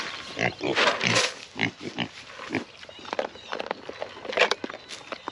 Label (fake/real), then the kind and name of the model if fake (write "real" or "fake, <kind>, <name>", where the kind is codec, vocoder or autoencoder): real